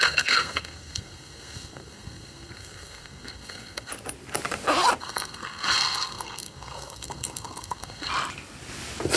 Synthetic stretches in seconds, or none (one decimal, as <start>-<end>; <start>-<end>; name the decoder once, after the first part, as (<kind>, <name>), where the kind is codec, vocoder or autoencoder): 0.0-3.9 (codec, SNAC); 5.0-8.1